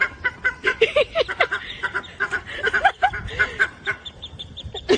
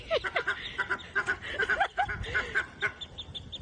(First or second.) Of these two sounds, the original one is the second